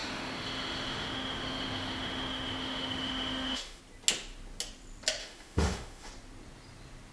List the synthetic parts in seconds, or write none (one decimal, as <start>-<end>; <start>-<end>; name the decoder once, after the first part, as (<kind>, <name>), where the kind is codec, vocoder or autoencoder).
0.0-3.8 (autoencoder, DAC-VAE); 5.2-6.1